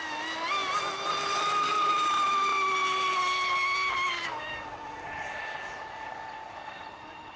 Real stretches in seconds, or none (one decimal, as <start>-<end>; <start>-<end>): 0.0-7.4